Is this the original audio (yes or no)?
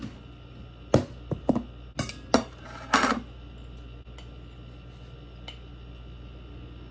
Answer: yes